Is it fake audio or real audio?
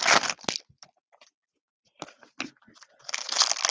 real